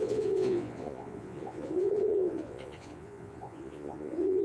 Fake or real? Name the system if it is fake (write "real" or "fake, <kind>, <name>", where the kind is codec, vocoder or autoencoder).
fake, vocoder, Vocos